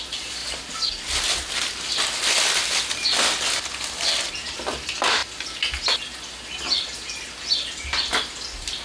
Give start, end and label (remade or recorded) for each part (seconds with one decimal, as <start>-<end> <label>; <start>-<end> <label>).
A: 0.0-8.8 recorded